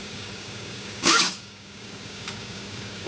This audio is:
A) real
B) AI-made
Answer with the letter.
B